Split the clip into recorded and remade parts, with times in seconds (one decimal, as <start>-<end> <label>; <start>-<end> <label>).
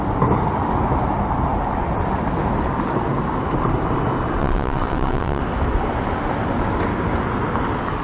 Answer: 0.0-4.4 recorded; 4.4-5.4 remade; 5.4-8.0 recorded